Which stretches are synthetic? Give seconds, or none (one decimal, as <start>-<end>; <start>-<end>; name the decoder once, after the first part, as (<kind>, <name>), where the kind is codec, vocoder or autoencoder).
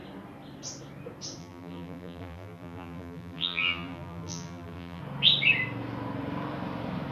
1.4-5.0 (vocoder, BigVGAN v2)